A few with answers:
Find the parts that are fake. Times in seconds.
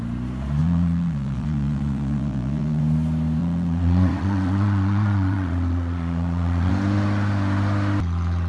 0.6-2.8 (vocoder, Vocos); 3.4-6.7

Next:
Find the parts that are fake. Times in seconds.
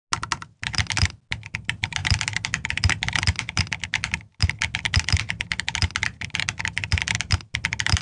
none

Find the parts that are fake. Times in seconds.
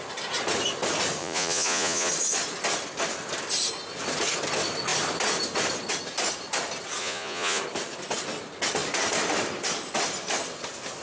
1.2-2.1 (vocoder, Vocos); 7.0-7.6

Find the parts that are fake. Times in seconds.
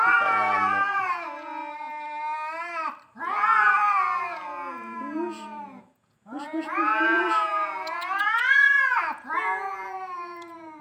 0.0-1.6 (vocoder, Vocos); 3.1-10.8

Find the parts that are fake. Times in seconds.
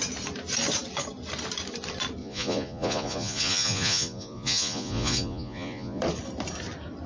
2.2-6.0 (vocoder, Vocos)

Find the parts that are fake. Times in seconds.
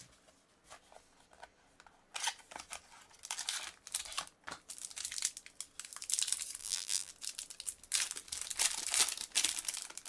6.6-7.1 (vocoder, BigVGAN v2)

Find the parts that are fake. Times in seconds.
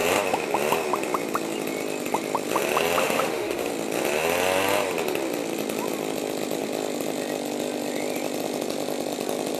3.0-3.7 (autoencoder, DAC-VAE)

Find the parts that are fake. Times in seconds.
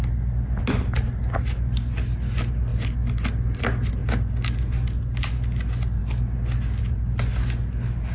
none